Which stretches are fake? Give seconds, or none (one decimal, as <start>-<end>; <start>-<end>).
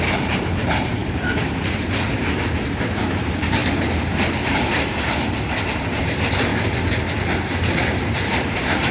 0.0-3.6; 5.6-6.5; 7.4-8.9